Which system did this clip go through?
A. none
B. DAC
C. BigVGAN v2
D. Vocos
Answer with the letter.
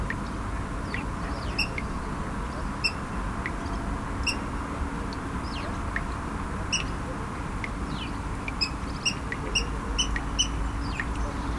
A